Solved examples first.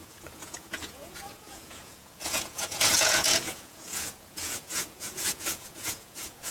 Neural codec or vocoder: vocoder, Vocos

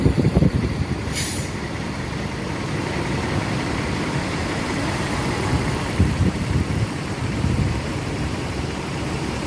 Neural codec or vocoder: vocoder, BigVGAN v2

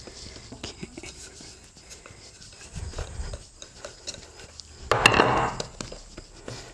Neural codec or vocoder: none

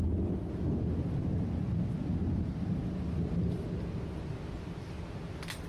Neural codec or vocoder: none